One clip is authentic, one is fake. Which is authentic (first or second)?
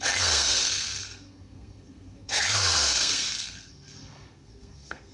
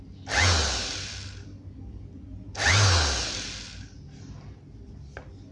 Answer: second